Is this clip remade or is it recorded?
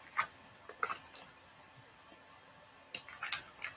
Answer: recorded